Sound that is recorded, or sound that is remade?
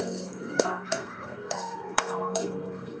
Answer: remade